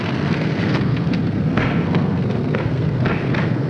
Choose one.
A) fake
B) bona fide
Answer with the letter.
A